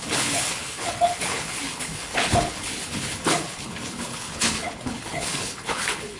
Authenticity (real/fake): fake